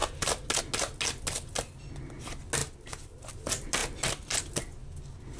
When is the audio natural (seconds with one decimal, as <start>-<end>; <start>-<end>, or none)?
0.0-5.4